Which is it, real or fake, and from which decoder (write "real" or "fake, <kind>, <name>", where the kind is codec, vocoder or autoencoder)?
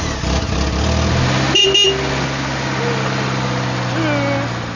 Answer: real